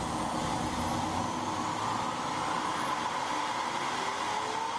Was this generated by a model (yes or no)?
no